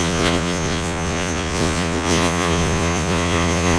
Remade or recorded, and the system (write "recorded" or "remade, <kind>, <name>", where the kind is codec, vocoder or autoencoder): remade, vocoder, Vocos